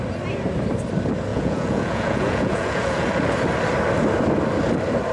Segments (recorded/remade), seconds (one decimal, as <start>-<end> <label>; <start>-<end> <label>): 0.0-1.3 recorded; 1.3-3.1 remade; 3.1-5.1 recorded